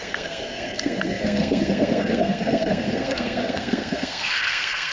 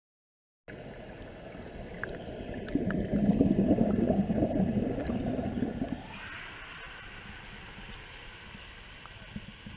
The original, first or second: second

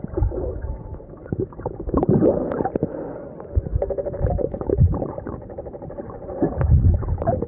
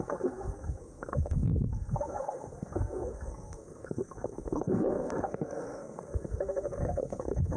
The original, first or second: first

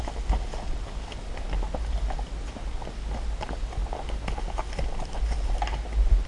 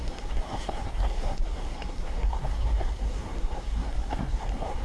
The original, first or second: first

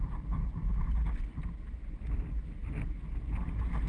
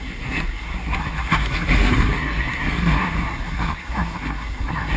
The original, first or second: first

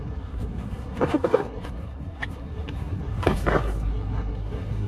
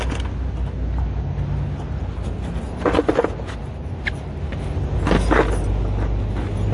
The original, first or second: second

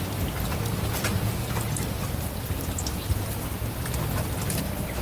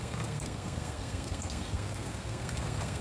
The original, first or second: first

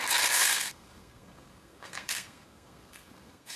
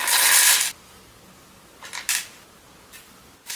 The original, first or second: second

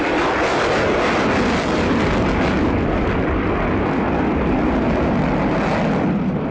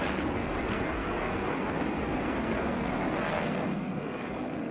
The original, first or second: first